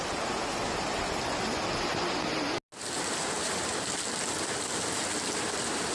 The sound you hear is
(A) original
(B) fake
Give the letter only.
A